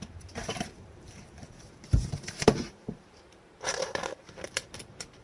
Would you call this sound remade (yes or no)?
yes